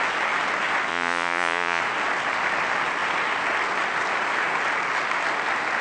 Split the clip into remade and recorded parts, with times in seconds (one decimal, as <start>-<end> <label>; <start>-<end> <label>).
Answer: 0.0-0.9 recorded; 0.9-1.8 remade; 1.8-5.8 recorded